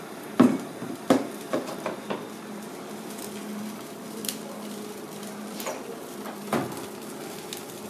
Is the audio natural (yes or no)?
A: no